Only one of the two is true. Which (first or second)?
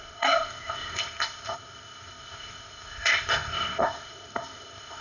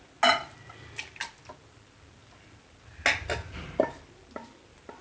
second